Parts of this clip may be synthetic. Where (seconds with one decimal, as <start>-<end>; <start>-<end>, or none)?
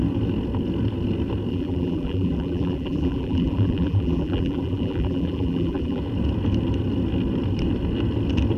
1.5-6.0